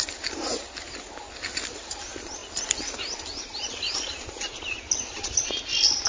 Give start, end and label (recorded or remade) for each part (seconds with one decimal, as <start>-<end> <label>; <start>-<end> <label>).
0.0-6.1 recorded